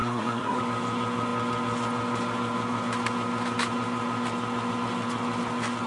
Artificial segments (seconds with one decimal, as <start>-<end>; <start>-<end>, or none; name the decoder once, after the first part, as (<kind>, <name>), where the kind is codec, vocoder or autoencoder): 0.0-0.6 (codec, SNAC)